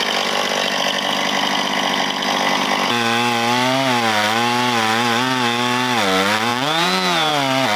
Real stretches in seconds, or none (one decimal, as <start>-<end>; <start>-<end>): 0.0-6.5; 7.3-7.8